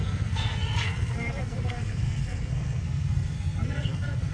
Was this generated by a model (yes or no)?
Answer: yes